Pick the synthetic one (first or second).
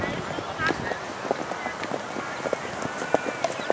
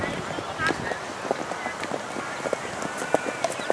second